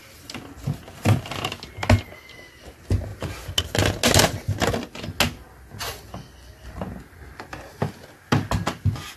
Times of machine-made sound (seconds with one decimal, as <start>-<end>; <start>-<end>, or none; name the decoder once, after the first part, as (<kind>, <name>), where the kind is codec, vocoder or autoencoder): none